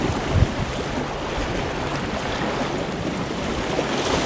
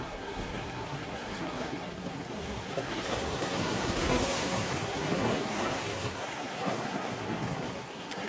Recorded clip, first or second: first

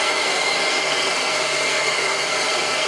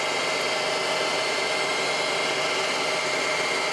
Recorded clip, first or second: second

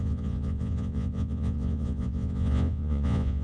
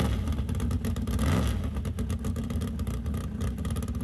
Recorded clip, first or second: second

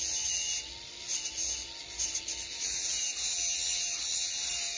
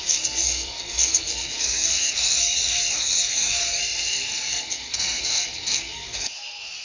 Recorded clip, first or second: first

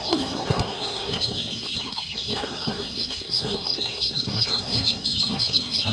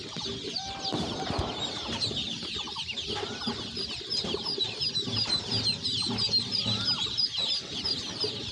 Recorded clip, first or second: second